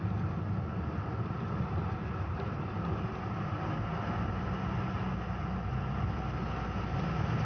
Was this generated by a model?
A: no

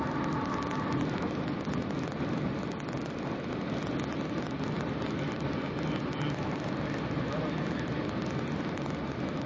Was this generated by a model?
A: no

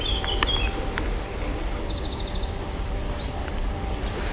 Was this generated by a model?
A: yes